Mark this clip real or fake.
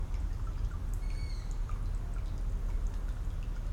real